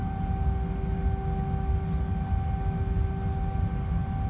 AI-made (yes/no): no